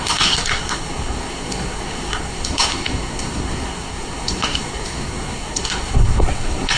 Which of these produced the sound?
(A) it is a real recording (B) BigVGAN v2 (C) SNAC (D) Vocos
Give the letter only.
C